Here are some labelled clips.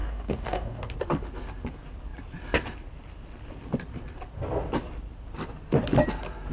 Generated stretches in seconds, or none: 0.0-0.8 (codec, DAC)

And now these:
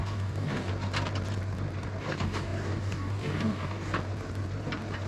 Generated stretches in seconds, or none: 0.0-0.7 (codec, DAC); 2.0-3.9

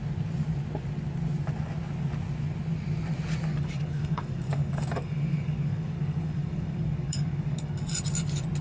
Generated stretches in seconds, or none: 3.5-7.8 (codec, DAC)

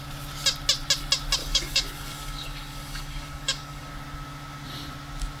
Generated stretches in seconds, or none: 1.4-3.9 (codec, DAC)

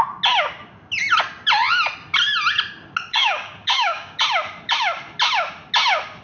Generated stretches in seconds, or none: 3.1-4.2 (codec, DAC)